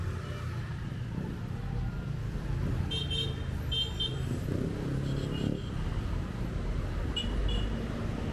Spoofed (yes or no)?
no